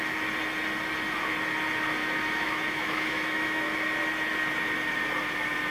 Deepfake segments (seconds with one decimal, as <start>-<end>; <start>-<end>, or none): 2.0-4.0